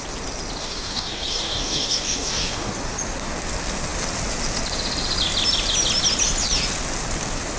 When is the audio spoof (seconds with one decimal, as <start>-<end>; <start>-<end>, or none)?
0.6-2.7